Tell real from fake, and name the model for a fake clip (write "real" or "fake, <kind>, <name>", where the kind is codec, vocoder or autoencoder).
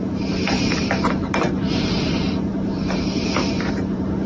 fake, vocoder, BigVGAN v2